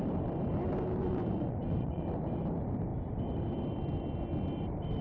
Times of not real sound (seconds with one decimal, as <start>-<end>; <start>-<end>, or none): 1.0-2.0

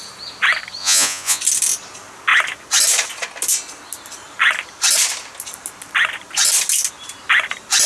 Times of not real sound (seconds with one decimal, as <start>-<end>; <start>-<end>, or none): 0.8-1.4

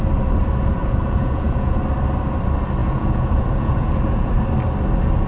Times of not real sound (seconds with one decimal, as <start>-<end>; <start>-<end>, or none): 0.8-1.8; 2.8-4.3

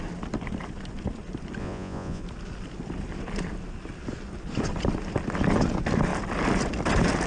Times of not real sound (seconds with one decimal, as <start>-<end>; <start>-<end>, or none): 1.6-2.2

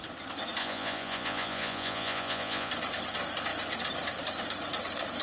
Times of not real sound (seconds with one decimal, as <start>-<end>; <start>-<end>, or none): 0.6-2.7